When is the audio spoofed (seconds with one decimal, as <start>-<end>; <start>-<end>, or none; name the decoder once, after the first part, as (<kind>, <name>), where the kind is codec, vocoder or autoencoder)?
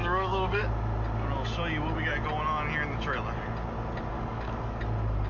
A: 0.0-0.6 (codec, DAC); 4.1-4.8